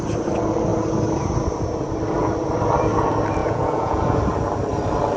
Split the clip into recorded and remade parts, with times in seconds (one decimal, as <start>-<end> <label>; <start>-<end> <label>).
0.0-3.4 recorded; 3.4-4.2 remade; 4.2-5.2 recorded